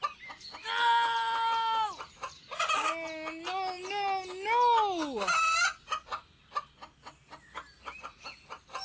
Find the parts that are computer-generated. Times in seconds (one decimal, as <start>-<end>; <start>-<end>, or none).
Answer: none